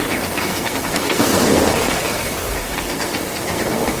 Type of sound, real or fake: fake